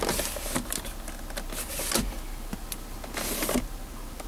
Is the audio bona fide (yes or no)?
yes